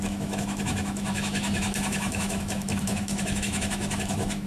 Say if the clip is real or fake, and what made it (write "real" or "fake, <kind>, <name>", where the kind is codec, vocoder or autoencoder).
fake, autoencoder, DAC-VAE